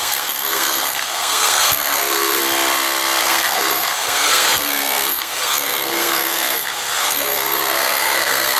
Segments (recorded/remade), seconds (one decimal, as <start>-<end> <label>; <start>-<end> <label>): 0.0-2.4 remade; 2.4-3.2 recorded; 3.2-8.6 remade